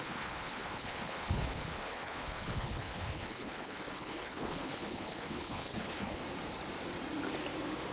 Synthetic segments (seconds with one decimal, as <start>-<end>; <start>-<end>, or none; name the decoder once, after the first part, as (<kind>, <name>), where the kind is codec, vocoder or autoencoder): 0.0-6.2 (codec, HILCodec)